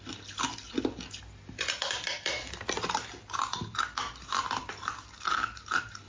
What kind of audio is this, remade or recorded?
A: recorded